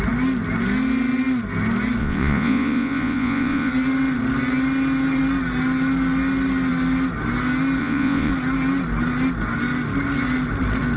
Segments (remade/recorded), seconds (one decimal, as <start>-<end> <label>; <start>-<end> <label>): 0.0-2.0 recorded; 2.0-3.7 remade; 3.7-7.8 recorded; 7.8-8.3 remade; 8.3-11.0 recorded